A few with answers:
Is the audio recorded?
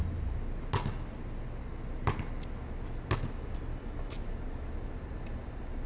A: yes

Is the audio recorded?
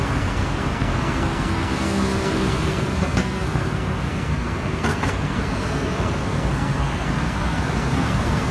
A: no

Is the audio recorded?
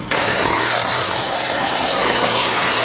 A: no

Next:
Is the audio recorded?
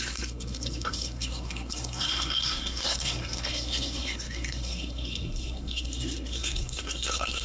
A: no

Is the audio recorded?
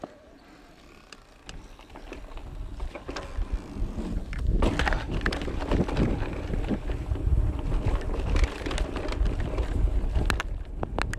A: yes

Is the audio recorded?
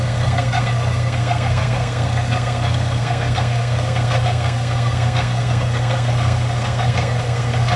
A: no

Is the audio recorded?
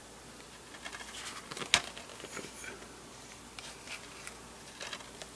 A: yes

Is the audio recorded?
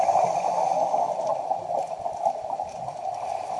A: yes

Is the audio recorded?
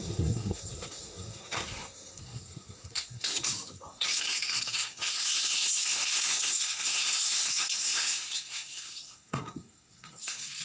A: no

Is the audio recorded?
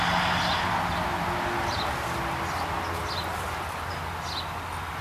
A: yes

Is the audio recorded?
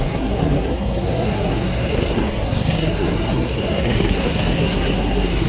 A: no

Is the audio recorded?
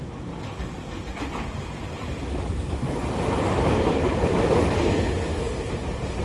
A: yes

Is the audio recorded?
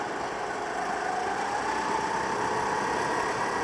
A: yes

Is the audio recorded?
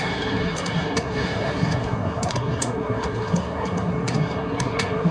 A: no